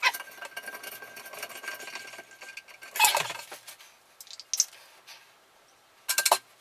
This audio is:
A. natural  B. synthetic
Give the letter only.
A